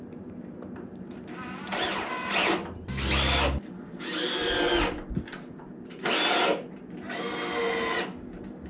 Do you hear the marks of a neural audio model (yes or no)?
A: no